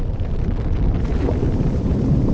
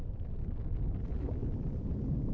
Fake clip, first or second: first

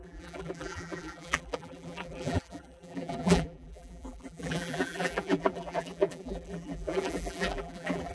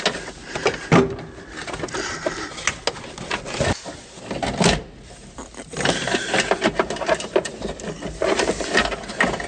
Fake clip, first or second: first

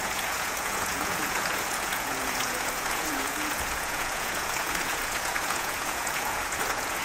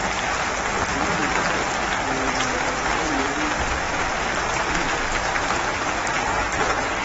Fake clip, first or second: first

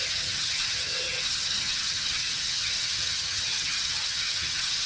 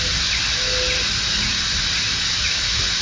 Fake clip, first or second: first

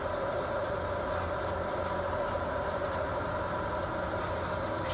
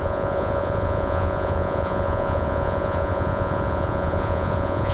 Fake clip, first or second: second